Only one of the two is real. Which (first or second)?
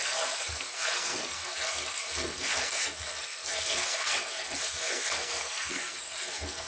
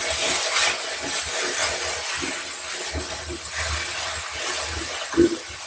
second